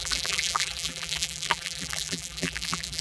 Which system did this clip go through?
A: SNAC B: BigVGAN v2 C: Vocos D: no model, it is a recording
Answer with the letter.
B